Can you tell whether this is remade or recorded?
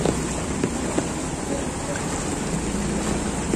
recorded